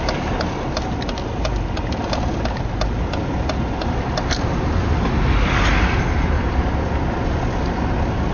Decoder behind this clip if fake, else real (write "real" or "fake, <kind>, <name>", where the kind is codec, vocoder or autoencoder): real